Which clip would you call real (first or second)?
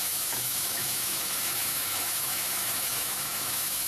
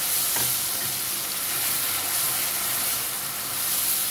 second